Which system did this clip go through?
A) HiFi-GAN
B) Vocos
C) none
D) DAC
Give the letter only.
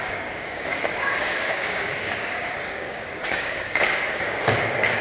D